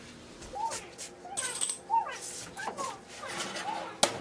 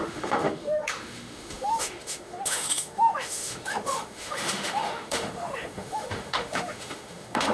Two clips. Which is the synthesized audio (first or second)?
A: second